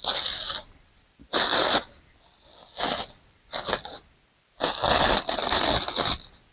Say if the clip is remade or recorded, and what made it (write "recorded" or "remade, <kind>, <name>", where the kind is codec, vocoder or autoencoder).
recorded